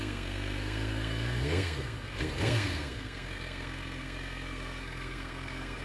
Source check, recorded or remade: remade